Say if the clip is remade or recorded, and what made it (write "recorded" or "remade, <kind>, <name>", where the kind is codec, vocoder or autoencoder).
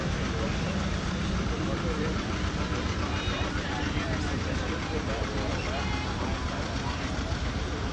remade, vocoder, BigVGAN v2